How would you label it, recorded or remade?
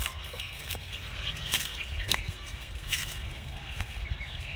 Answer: remade